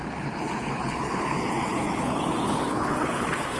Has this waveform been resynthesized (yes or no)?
yes